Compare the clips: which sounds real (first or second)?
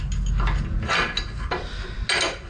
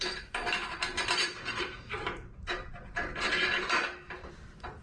first